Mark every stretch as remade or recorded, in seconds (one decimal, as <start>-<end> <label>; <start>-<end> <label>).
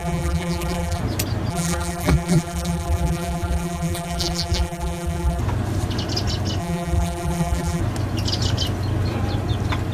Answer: 0.0-1.0 remade; 1.0-1.5 recorded; 1.5-5.4 remade; 5.4-6.6 recorded; 6.6-7.8 remade; 7.8-9.9 recorded